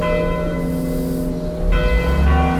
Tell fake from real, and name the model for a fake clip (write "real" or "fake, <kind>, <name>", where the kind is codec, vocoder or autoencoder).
real